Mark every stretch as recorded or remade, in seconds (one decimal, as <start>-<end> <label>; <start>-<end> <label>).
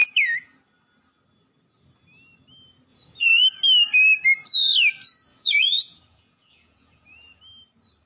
0.0-2.9 recorded; 2.9-3.4 remade; 3.4-5.3 recorded; 5.3-7.4 remade; 7.4-8.1 recorded